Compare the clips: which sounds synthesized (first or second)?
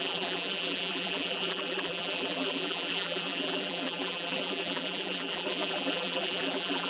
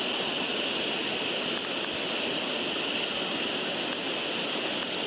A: first